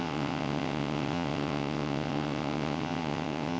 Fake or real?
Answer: fake